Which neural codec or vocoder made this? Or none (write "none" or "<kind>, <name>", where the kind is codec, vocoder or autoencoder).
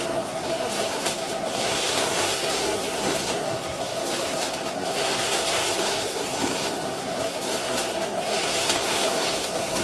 codec, SNAC